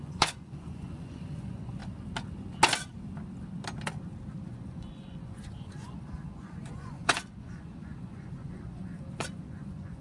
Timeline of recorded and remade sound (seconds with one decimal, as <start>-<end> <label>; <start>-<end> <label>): 0.0-1.8 remade; 1.8-4.5 recorded; 4.5-10.0 remade